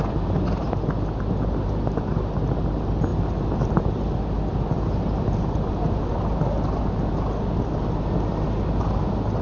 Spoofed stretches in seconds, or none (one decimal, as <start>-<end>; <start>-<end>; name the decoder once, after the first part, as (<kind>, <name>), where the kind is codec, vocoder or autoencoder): none